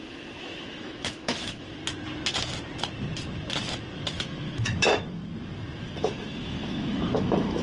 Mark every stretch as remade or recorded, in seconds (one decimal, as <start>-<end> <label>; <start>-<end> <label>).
0.0-1.8 remade; 1.8-4.2 recorded; 4.2-5.2 remade; 5.2-6.0 recorded; 6.0-7.6 remade